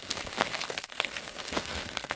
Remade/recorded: remade